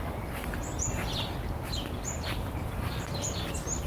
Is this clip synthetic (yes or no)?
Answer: no